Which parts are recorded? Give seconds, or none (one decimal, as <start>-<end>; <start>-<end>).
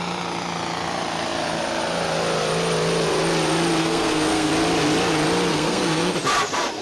0.0-3.8; 4.5-5.5; 6.1-6.8